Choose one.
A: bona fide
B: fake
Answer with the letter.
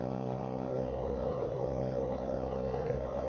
B